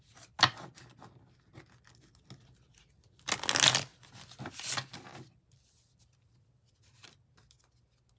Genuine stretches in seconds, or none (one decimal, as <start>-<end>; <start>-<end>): 0.0-8.2